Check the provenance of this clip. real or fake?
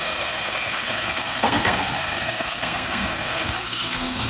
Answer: fake